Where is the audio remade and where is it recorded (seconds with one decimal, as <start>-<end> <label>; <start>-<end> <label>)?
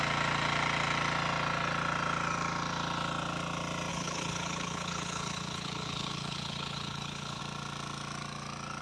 0.0-3.9 recorded; 3.9-7.4 remade; 7.4-8.8 recorded